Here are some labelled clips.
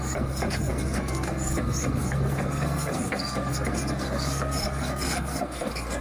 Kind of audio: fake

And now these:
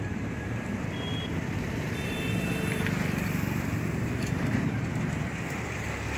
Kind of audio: fake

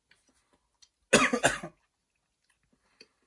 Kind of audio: real